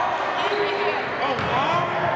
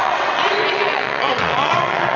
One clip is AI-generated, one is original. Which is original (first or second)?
first